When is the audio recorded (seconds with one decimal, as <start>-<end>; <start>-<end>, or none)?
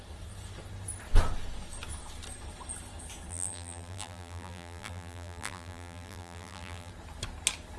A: 0.0-3.3; 6.9-7.8